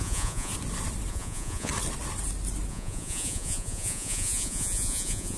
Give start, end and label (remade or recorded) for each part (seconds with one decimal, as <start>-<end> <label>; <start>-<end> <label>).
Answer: 0.0-0.5 remade; 0.5-1.1 recorded; 1.1-1.7 remade; 1.7-2.7 recorded; 2.7-5.4 remade